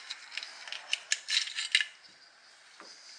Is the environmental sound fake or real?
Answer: real